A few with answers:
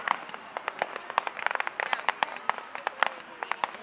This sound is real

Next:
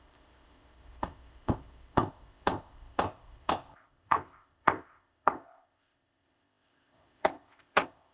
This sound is fake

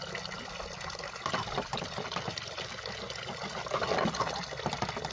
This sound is real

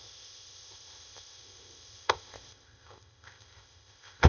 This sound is fake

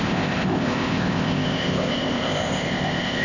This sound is fake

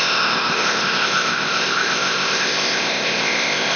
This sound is fake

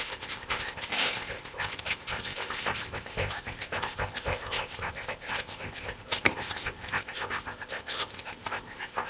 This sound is fake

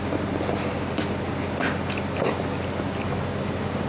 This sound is real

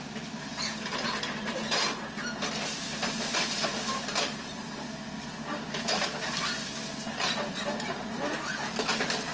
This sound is real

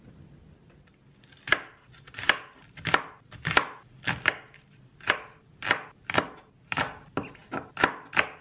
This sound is real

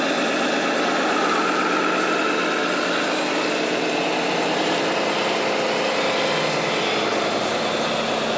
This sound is real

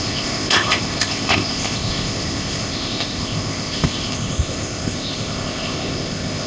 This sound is fake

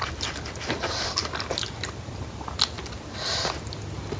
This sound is real